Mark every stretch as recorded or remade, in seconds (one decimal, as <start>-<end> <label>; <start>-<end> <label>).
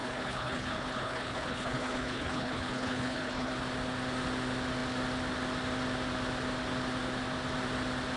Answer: 0.0-3.5 remade; 3.5-8.2 recorded